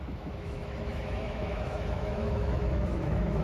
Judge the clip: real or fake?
fake